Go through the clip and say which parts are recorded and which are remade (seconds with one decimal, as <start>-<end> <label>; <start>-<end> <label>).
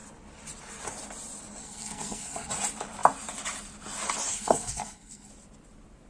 0.0-1.6 recorded; 1.6-2.5 remade; 2.5-4.3 recorded; 4.3-5.3 remade; 5.3-6.1 recorded